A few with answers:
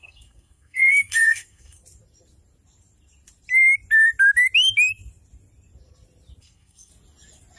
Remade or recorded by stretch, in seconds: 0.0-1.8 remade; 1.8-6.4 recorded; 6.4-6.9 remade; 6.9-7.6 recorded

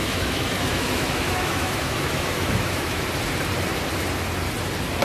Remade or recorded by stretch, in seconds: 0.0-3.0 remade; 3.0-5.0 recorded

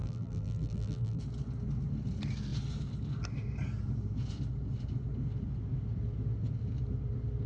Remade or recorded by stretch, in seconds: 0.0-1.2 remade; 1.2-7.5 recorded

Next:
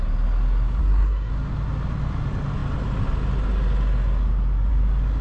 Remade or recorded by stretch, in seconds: 0.0-0.8 recorded; 0.8-1.3 remade; 1.3-5.2 recorded

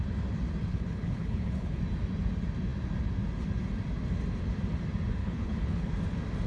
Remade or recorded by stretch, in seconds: 0.0-0.7 recorded; 0.7-1.8 remade; 1.8-5.2 recorded; 5.2-5.9 remade; 5.9-6.5 recorded

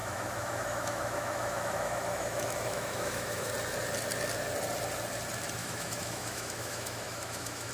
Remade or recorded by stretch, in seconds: 0.0-3.5 remade; 3.5-5.6 recorded; 5.6-7.7 remade

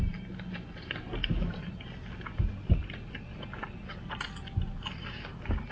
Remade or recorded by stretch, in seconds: 0.0-5.7 recorded

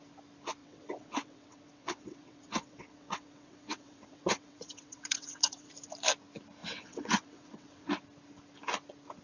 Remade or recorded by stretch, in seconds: 0.0-0.6 recorded; 0.6-5.7 remade; 5.7-6.6 recorded; 6.6-7.9 remade; 7.9-9.2 recorded